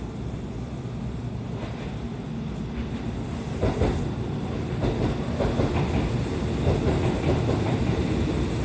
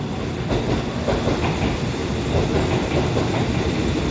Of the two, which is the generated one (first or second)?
second